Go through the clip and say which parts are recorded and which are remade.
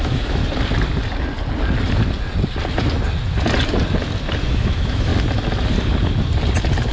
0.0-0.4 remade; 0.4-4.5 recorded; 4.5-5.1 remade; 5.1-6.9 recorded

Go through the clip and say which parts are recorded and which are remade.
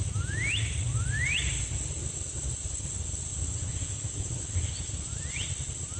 0.0-6.0 recorded